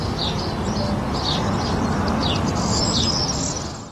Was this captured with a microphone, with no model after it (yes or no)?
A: yes